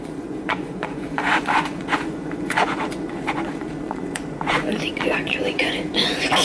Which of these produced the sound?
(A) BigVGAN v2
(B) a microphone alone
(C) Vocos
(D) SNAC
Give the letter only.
C